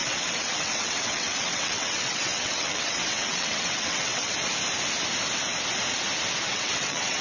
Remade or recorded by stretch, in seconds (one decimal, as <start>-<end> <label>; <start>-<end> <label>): 0.0-4.3 remade; 4.3-6.5 recorded; 6.5-7.2 remade